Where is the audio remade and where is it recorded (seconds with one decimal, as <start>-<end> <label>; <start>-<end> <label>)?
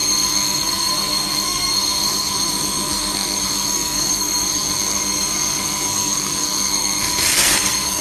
0.0-8.0 remade